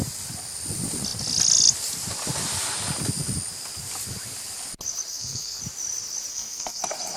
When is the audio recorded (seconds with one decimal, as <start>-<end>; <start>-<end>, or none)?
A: 0.0-5.1; 5.6-6.3; 6.8-7.2